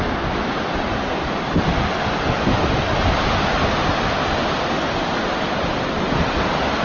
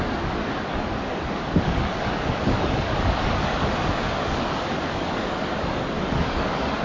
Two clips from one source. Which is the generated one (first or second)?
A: second